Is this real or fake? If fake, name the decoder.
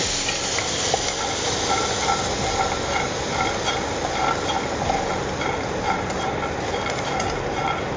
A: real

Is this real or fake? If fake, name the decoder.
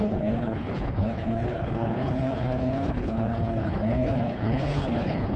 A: fake, codec, HILCodec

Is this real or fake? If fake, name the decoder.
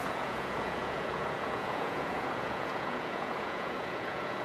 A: fake, vocoder, Vocos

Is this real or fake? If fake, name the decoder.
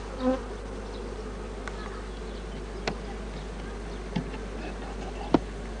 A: real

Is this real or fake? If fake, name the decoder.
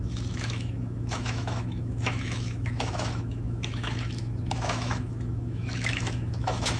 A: fake, autoencoder, DAC-VAE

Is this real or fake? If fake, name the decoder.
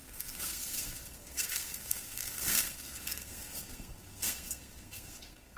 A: fake, codec, SNAC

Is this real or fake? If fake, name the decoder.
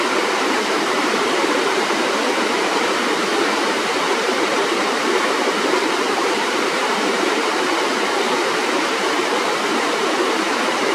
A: fake, vocoder, BigVGAN v2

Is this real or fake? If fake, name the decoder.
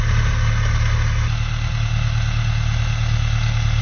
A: real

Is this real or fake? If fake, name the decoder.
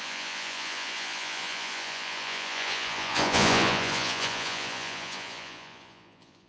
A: fake, vocoder, Vocos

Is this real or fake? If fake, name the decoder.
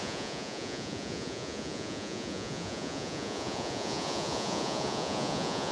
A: fake, vocoder, Vocos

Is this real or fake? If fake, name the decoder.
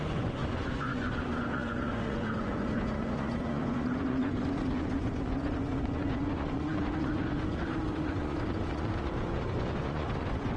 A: fake, vocoder, Vocos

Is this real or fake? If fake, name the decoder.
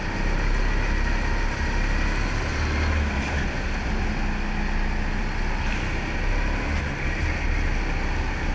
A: real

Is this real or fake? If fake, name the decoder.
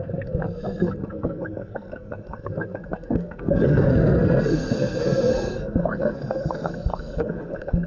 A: fake, codec, SNAC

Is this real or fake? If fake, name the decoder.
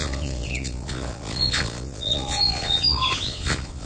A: fake, vocoder, Vocos